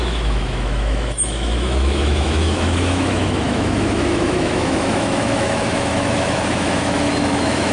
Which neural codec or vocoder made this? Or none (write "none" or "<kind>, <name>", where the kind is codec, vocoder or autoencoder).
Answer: autoencoder, DAC-VAE